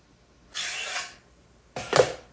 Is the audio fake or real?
real